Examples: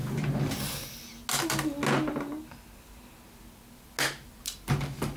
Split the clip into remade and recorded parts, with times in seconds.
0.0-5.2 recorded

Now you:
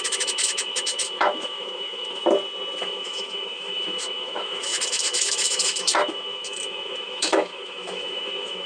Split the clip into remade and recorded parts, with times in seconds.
0.0-2.2 remade; 2.2-2.8 recorded; 2.8-8.7 remade

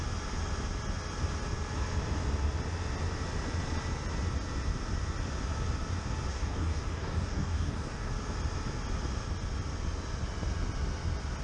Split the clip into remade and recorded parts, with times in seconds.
0.0-6.3 recorded; 6.3-8.1 remade; 8.1-11.4 recorded

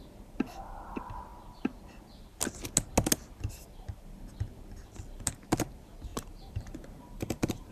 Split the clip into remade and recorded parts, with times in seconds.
0.0-6.1 recorded; 6.1-7.7 remade